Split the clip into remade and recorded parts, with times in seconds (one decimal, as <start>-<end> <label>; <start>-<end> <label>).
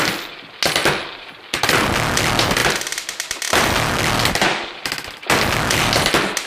0.0-6.5 recorded